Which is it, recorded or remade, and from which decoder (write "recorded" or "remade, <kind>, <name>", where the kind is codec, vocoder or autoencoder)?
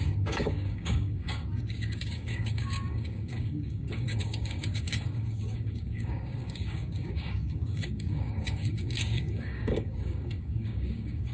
remade, codec, DAC